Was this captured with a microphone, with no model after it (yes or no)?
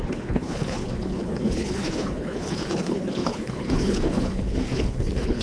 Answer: no